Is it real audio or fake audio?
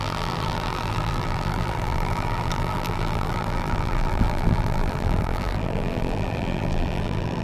fake